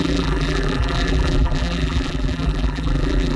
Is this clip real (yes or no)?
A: no